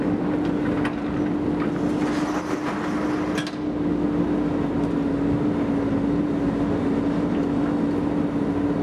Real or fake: real